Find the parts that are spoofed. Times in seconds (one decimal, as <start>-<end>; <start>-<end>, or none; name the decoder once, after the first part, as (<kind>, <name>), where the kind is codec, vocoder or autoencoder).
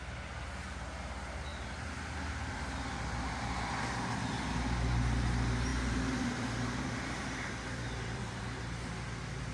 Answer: 1.5-3.3 (vocoder, BigVGAN v2); 5.7-8.4